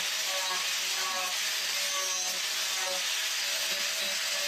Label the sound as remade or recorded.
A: recorded